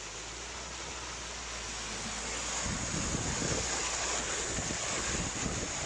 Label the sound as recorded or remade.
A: recorded